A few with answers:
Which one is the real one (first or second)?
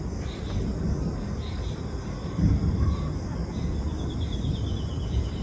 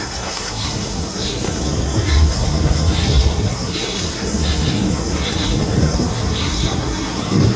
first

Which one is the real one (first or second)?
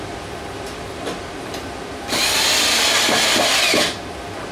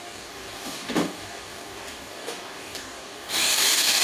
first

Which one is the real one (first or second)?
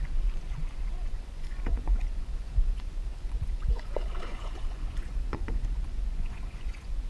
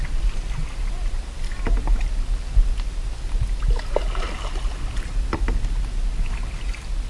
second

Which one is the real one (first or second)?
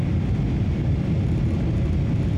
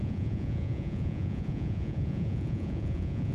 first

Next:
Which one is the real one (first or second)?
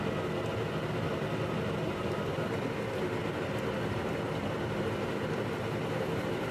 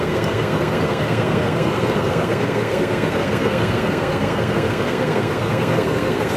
first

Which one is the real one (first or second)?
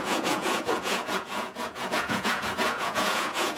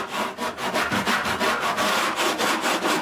second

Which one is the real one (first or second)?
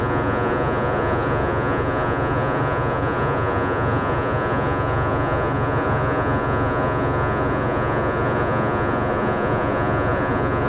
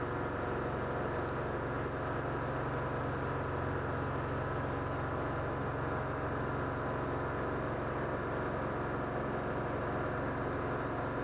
second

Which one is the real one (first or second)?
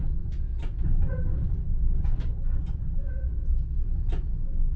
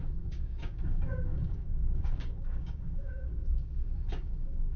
first